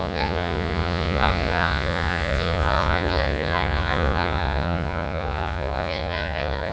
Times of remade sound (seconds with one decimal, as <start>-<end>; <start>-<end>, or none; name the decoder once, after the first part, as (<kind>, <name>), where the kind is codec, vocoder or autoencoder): 0.0-6.7 (vocoder, Vocos)